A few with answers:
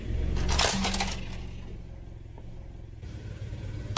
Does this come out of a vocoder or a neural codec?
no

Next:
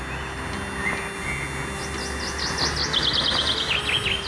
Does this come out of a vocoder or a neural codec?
no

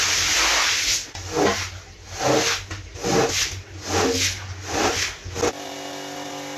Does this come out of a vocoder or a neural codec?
no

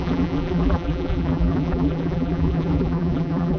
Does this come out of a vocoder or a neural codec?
yes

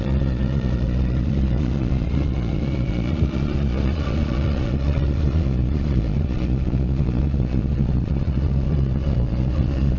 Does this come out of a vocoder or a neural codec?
yes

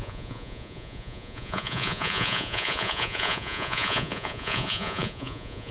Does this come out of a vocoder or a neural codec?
yes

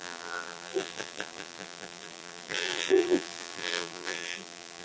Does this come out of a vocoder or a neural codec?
yes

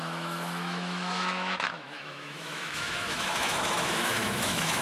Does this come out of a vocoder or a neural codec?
yes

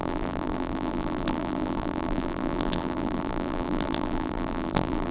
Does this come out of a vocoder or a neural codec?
yes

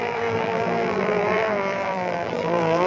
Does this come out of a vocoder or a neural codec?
yes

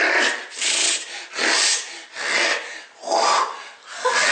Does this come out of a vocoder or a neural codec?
no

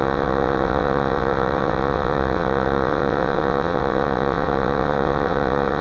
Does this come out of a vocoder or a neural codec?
yes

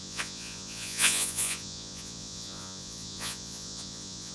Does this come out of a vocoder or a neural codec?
yes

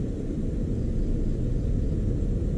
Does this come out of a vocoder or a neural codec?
no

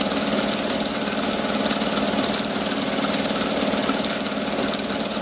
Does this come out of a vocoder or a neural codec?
no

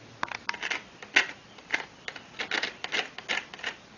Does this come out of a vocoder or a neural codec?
no